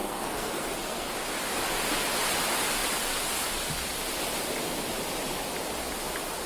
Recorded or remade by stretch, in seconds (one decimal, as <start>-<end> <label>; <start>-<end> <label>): 0.0-1.1 remade; 1.1-6.5 recorded